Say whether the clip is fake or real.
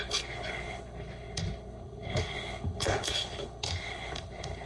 fake